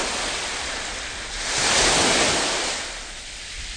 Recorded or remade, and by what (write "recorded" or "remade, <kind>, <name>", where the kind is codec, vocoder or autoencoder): recorded